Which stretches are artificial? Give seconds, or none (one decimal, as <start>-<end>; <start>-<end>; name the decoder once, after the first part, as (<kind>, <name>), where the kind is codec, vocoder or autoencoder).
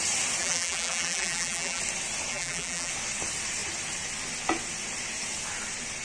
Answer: 0.4-1.8 (vocoder, BigVGAN v2); 2.3-2.9